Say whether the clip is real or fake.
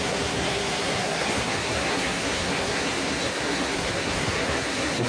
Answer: fake